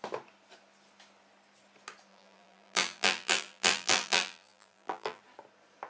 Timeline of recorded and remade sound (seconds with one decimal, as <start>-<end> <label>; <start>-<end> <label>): 0.0-2.1 recorded; 2.1-5.2 remade; 5.2-5.9 recorded